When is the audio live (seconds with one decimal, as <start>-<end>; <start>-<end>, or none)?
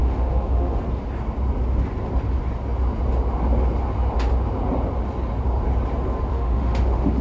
0.8-6.3